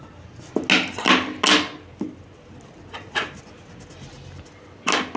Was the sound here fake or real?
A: real